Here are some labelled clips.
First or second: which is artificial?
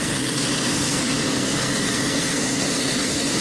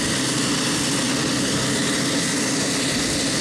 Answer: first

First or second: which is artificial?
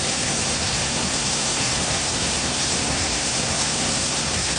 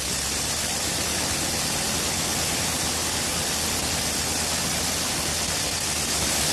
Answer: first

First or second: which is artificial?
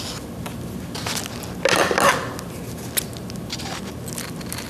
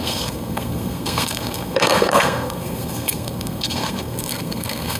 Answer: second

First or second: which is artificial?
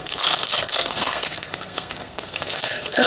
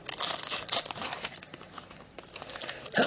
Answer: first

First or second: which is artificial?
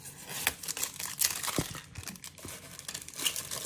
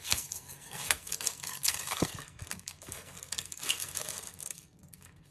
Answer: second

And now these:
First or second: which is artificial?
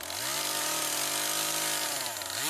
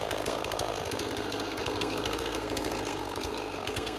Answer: second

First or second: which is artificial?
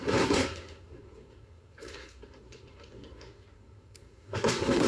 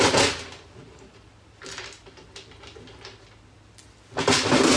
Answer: first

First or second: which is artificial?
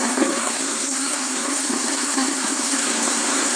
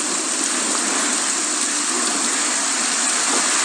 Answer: first